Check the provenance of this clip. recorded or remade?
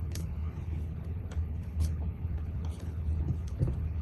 remade